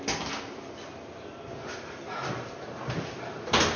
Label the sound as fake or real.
real